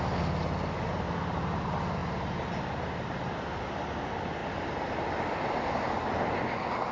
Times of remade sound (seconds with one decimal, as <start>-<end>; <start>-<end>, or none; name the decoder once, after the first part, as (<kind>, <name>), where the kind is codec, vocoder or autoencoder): none